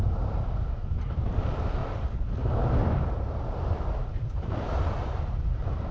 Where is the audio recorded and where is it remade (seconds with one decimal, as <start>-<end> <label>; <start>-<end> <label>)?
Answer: 0.0-1.8 recorded; 1.8-2.3 remade; 2.3-4.0 recorded; 4.0-5.4 remade; 5.4-5.9 recorded